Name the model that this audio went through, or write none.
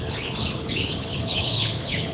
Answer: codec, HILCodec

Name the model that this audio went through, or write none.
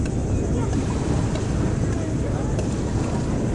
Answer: none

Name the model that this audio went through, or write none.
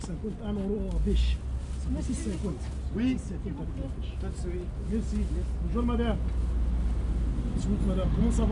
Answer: none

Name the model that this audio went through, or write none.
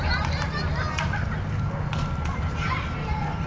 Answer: none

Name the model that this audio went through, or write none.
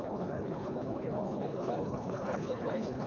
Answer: codec, HILCodec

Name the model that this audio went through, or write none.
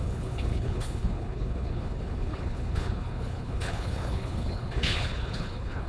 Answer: codec, HILCodec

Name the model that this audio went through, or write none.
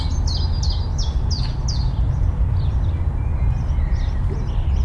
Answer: none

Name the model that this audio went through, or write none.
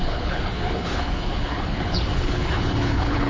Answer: codec, HILCodec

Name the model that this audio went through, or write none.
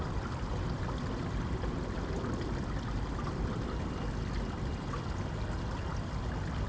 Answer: none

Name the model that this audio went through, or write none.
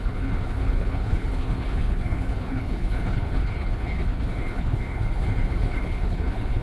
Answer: codec, HILCodec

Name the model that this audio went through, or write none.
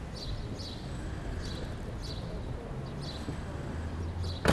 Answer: none